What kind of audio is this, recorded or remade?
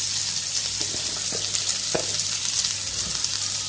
recorded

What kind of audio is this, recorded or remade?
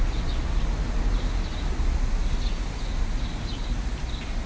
recorded